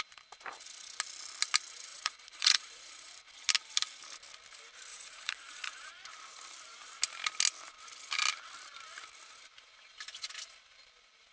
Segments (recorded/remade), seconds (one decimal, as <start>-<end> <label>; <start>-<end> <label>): 0.0-1.9 recorded; 1.9-3.1 remade; 3.1-4.9 recorded; 4.9-5.9 remade; 5.9-11.3 recorded